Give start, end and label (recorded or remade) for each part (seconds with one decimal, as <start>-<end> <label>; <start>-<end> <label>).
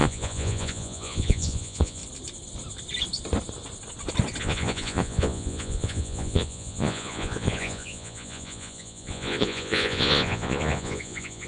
0.0-2.0 remade; 2.0-4.4 recorded; 4.4-11.5 remade